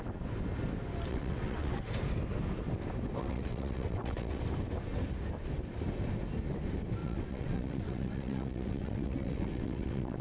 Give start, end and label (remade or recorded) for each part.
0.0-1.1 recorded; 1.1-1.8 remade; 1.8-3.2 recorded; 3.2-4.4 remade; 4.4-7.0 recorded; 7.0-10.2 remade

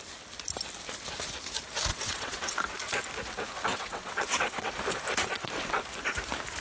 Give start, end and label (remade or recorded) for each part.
0.0-1.9 recorded; 1.9-2.6 remade; 2.6-3.7 recorded; 3.7-4.7 remade; 4.7-5.2 recorded; 5.2-5.8 remade; 5.8-6.6 recorded

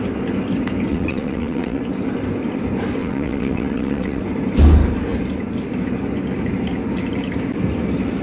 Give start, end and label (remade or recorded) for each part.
0.0-0.9 recorded; 0.9-1.8 remade; 1.8-3.0 recorded; 3.0-4.2 remade; 4.2-8.2 recorded

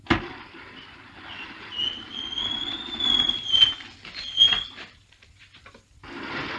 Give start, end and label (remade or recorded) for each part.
0.0-6.6 recorded

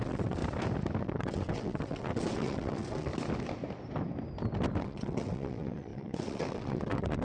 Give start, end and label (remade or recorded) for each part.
0.0-0.4 remade; 0.4-1.0 recorded; 1.0-3.1 remade; 3.1-4.8 recorded; 4.8-7.2 remade

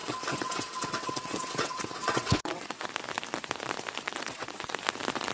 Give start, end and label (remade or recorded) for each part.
0.0-2.9 remade; 2.9-4.1 recorded; 4.1-4.7 remade; 4.7-5.3 recorded

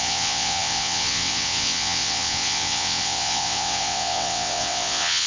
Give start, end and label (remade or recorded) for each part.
0.0-5.3 remade

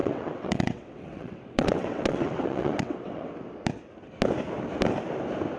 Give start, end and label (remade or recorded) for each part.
0.0-3.3 remade; 3.3-5.6 recorded